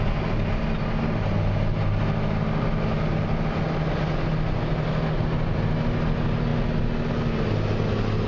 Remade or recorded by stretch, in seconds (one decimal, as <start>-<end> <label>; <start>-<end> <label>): 0.0-8.3 recorded